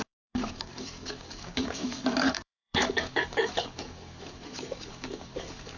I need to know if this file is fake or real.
fake